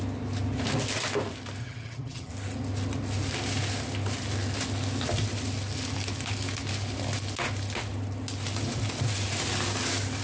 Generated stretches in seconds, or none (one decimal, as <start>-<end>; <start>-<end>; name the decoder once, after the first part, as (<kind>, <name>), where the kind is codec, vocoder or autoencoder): 1.6-2.3 (vocoder, HiFi-GAN)